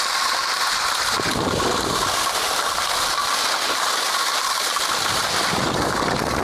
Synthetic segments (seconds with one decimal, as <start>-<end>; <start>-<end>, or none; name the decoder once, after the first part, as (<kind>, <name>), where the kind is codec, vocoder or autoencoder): none